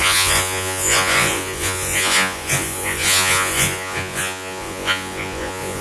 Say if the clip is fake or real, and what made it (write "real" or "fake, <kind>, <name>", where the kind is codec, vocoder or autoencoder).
fake, vocoder, Vocos